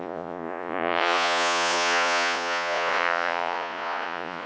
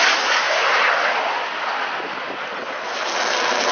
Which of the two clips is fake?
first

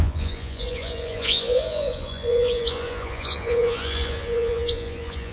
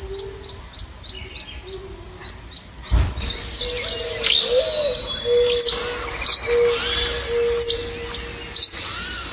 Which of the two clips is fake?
first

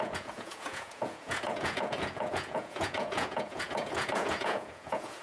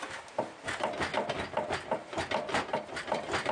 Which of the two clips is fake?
first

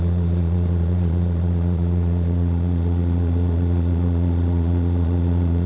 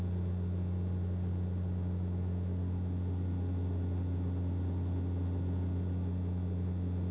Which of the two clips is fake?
first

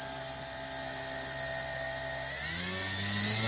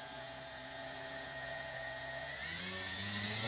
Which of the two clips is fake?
second